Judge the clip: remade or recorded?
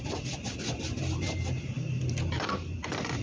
recorded